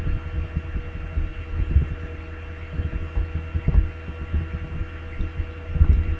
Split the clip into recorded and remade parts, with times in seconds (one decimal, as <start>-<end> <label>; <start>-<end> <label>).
0.0-6.2 recorded